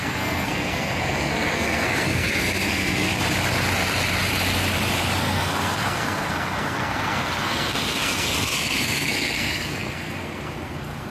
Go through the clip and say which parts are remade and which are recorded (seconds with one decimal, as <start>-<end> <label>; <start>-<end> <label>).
0.0-3.1 remade; 3.1-5.2 recorded; 5.2-11.1 remade